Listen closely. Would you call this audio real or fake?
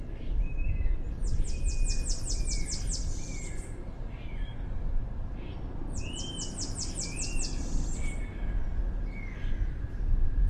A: real